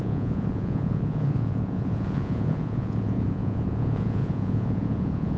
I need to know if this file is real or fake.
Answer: fake